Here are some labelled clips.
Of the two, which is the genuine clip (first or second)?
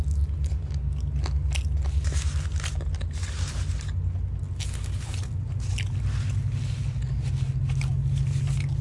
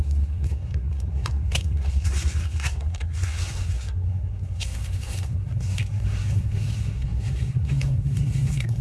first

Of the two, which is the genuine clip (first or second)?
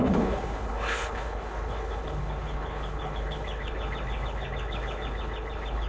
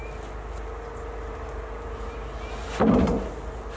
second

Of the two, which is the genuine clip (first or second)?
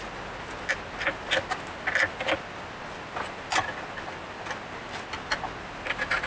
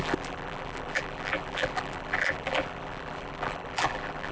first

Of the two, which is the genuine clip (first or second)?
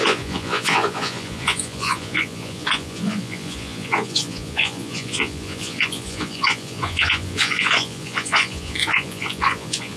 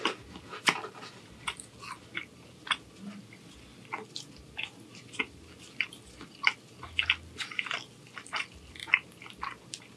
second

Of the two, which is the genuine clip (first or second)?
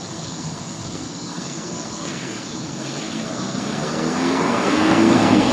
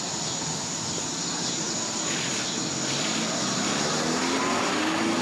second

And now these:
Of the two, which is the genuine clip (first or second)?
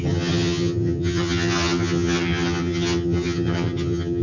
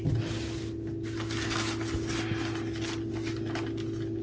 second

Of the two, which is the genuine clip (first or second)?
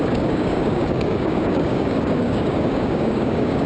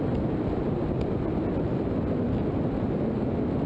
second